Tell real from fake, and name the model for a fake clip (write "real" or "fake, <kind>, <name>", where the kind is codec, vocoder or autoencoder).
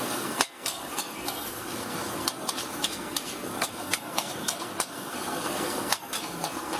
fake, codec, SNAC